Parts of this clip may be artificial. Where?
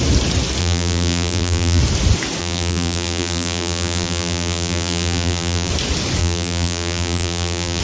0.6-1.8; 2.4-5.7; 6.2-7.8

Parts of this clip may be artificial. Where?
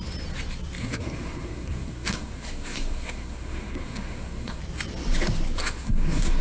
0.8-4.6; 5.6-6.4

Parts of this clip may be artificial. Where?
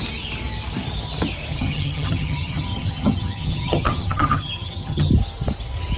1.5-5.1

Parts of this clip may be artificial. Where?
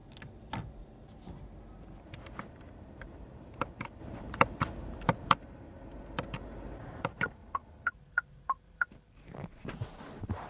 0.8-10.5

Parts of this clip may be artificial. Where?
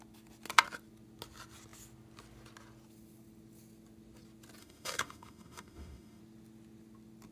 4.6-6.2